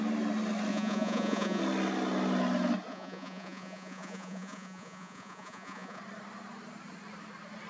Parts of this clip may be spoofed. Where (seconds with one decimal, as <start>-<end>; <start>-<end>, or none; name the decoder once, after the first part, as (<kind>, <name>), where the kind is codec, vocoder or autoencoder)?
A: 0.7-1.6 (vocoder, Vocos); 2.9-6.0